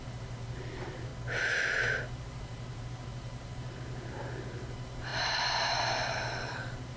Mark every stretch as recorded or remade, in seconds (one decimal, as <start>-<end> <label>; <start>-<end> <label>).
0.0-1.1 remade; 1.1-2.0 recorded; 2.0-7.0 remade